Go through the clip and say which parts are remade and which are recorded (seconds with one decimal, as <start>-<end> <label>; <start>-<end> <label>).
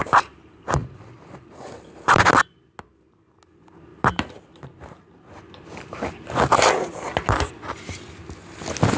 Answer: 0.0-0.8 recorded; 0.8-2.2 remade; 2.2-3.9 recorded; 3.9-5.0 remade; 5.0-9.0 recorded